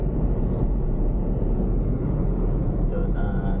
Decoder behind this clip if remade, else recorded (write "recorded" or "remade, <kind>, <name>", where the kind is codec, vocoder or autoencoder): remade, vocoder, Vocos